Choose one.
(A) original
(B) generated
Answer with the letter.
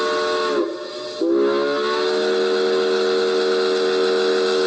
A